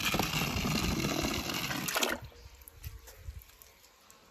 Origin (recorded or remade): recorded